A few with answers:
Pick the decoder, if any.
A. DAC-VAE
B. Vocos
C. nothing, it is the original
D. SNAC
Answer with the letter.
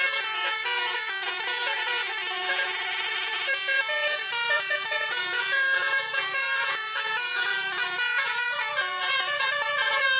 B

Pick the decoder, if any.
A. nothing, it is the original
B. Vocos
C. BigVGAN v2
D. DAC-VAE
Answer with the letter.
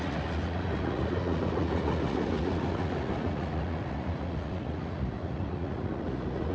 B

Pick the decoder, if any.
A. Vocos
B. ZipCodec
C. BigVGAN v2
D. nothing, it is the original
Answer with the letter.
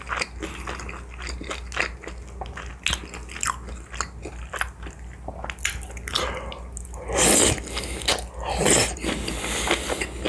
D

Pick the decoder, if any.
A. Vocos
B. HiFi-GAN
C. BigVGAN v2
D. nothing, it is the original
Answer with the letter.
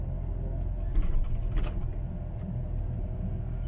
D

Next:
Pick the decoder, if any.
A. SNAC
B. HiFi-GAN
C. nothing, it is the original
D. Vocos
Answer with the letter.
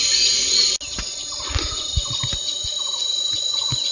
C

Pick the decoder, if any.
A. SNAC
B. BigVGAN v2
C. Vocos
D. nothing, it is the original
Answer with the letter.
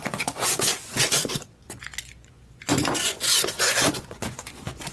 C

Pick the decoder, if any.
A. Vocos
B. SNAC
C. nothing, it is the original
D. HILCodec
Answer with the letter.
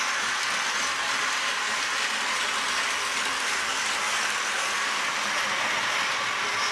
C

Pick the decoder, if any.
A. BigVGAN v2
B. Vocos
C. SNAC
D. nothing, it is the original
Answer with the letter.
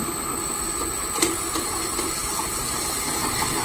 D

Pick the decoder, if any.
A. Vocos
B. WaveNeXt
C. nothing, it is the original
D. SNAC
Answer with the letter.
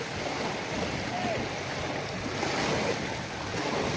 C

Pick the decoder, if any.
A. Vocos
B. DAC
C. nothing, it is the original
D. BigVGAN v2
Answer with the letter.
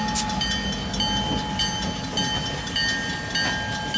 C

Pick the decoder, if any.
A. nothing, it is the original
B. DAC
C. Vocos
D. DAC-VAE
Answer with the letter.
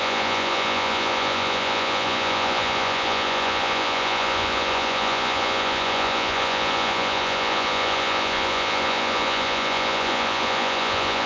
C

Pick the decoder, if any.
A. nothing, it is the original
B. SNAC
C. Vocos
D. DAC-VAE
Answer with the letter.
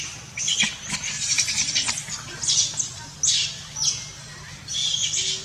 A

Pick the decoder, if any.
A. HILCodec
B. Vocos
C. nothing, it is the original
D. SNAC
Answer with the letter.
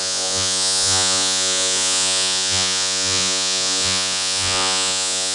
B